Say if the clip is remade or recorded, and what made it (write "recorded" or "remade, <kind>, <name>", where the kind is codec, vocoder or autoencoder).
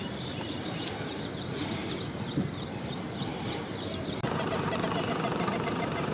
remade, vocoder, BigVGAN v2